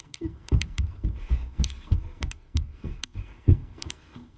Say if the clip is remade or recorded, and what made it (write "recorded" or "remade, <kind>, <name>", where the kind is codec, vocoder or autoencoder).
remade, codec, SNAC